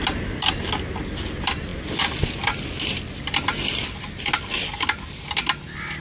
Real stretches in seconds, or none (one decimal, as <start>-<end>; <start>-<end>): 0.0-6.0